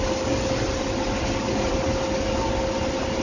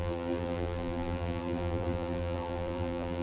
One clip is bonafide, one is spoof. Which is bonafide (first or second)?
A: first